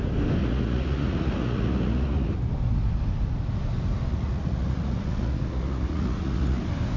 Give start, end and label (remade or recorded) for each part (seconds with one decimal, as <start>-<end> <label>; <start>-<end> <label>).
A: 0.0-0.4 recorded; 0.4-2.3 remade; 2.3-4.1 recorded; 4.1-6.6 remade; 6.6-7.0 recorded